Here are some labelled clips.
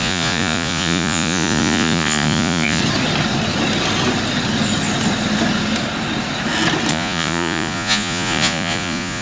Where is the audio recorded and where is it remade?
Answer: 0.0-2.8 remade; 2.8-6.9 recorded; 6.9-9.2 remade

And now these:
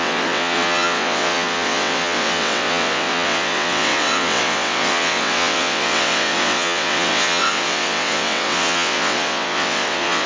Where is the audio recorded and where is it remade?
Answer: 0.0-10.3 remade

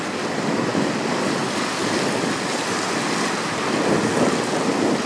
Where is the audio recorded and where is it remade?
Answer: 0.0-5.1 recorded

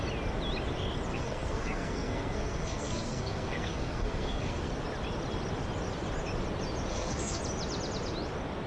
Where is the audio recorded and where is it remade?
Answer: 0.0-1.1 recorded; 1.1-4.7 remade; 4.7-6.9 recorded; 6.9-7.4 remade; 7.4-8.7 recorded

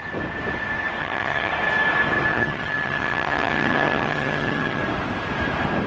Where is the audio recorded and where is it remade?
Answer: 0.0-1.0 recorded; 1.0-1.5 remade; 1.5-2.3 recorded; 2.3-4.8 remade; 4.8-5.9 recorded